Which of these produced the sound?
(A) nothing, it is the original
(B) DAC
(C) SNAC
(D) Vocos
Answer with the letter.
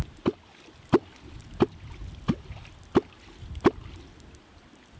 A